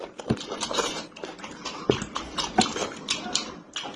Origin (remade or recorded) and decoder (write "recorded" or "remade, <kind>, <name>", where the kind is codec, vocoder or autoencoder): remade, vocoder, BigVGAN v2